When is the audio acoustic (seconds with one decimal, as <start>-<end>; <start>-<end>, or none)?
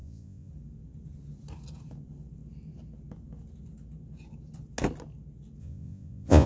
0.5-5.6